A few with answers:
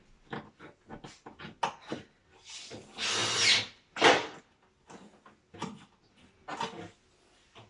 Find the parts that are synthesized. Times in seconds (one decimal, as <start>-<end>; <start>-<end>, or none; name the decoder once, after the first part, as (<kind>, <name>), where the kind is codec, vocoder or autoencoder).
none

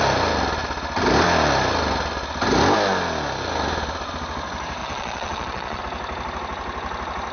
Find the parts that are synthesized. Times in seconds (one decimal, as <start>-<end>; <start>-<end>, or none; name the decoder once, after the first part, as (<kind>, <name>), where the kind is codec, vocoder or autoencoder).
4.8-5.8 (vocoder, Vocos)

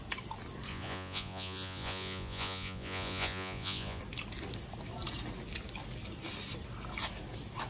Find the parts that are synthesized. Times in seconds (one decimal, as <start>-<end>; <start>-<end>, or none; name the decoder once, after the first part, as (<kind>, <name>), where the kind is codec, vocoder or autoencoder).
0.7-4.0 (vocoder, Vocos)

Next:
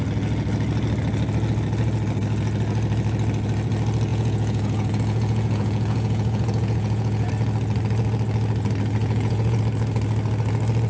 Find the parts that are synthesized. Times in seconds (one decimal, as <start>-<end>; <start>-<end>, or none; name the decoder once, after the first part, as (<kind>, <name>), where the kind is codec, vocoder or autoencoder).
4.1-7.3 (vocoder, Vocos); 9.0-9.6

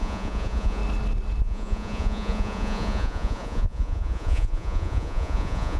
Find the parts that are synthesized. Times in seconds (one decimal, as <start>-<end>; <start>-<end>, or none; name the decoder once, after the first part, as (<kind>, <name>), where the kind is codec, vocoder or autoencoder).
0.0-0.8 (vocoder, Vocos); 1.4-5.8

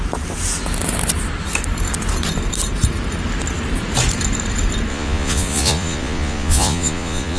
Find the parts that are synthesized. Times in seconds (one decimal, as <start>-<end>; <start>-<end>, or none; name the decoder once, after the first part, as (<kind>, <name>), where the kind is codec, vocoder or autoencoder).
4.9-7.4 (vocoder, Vocos)

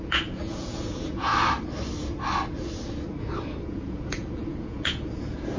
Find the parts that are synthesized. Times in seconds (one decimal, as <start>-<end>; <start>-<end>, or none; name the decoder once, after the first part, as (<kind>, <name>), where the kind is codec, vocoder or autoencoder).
0.0-1.3 (vocoder, Vocos); 3.7-5.6

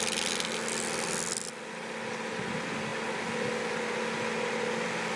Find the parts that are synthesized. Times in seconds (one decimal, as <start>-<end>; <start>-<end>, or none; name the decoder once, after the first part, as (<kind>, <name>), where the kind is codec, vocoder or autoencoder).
none